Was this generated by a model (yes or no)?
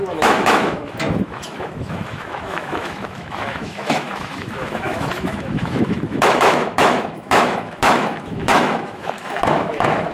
yes